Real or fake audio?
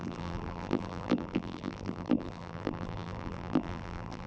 fake